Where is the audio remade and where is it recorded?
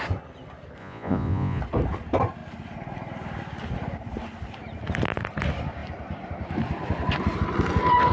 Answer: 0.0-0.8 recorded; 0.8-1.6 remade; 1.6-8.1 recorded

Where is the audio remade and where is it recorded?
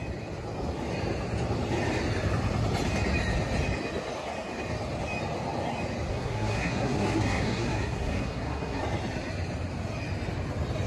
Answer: 0.0-6.1 recorded; 6.1-8.8 remade; 8.8-10.9 recorded